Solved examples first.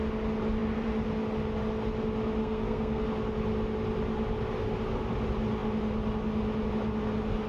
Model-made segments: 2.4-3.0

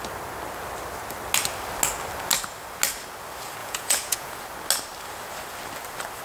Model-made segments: 3.6-4.4